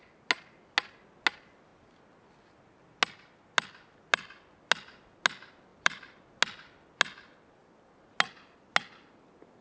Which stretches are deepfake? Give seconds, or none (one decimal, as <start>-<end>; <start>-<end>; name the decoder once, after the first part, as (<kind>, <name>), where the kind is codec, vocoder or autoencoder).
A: 5.7-6.2 (vocoder, BigVGAN v2)